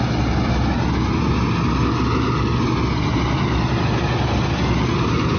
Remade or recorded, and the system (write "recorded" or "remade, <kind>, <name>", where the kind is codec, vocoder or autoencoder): recorded